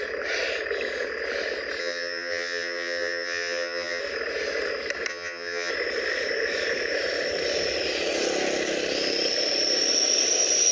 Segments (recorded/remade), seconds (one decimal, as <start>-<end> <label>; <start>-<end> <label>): 0.0-1.8 recorded; 1.8-4.0 remade; 4.0-5.1 recorded; 5.1-5.7 remade; 5.7-10.7 recorded